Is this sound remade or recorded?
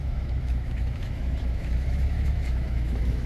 remade